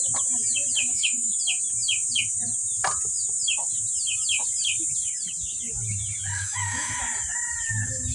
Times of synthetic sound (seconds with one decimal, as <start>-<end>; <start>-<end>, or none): 0.9-1.4; 6.3-7.0